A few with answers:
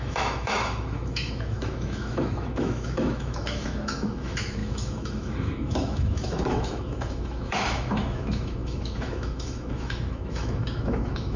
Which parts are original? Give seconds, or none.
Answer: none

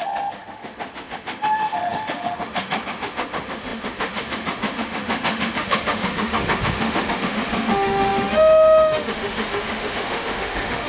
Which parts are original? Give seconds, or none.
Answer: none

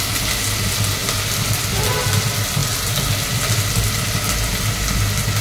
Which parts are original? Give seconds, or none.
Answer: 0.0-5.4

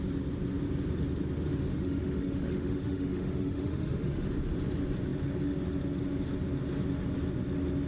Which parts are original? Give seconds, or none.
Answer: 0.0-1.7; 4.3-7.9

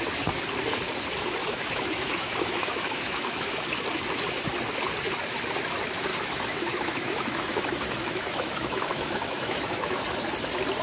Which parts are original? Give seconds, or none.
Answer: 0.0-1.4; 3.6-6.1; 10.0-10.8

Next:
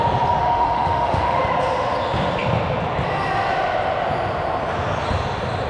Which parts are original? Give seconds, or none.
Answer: 0.0-0.4; 1.4-5.7

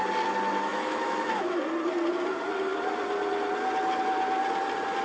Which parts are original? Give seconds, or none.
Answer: 0.0-0.7; 1.6-5.0